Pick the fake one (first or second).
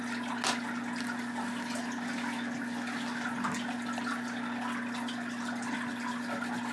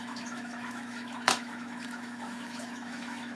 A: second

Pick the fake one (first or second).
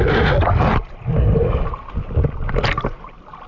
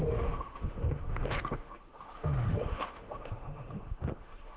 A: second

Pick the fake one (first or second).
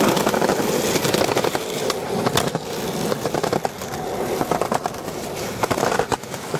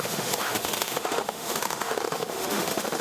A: second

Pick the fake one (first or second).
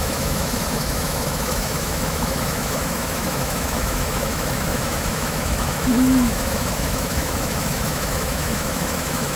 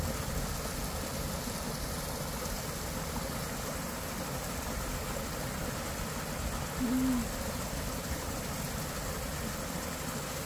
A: first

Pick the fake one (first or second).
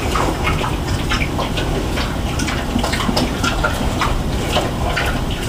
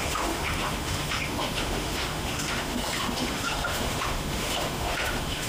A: second